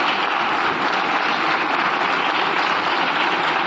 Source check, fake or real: real